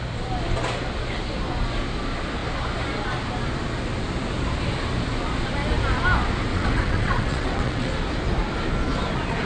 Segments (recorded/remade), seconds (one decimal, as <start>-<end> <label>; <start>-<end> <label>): 0.0-6.5 recorded; 6.5-7.9 remade; 7.9-9.5 recorded